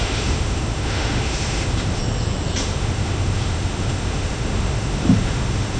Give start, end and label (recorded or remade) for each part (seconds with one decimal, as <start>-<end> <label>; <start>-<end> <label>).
0.0-2.0 remade; 2.0-2.6 recorded; 2.6-5.8 remade